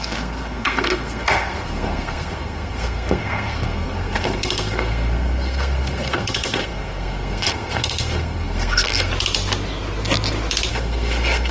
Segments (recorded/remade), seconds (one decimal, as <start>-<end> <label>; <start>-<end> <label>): 0.0-9.1 remade; 9.1-10.7 recorded; 10.7-11.5 remade